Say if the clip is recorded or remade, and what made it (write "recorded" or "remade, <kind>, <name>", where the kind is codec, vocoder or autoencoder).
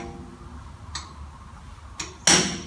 recorded